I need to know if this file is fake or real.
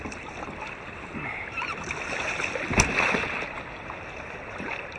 real